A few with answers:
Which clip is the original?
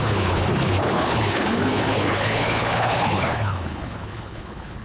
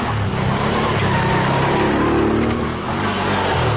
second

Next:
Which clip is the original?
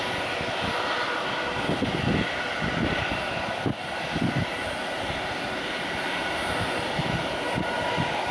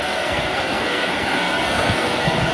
first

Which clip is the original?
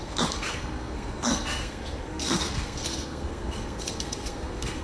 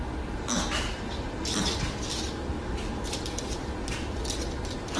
second